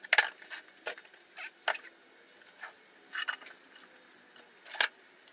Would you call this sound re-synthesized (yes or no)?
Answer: no